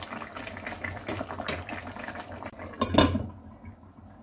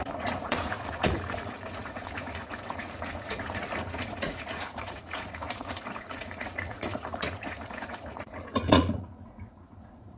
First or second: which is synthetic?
second